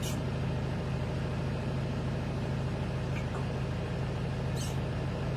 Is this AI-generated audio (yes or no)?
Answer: no